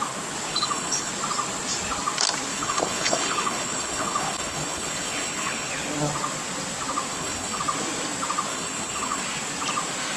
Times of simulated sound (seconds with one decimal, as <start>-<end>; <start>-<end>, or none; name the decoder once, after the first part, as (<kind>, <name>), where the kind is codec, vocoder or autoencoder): 0.5-1.1 (codec, HILCodec); 2.5-5.7; 7.1-7.6; 8.5-9.2